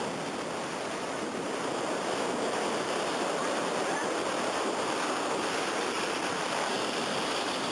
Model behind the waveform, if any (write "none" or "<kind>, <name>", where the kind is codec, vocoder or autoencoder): none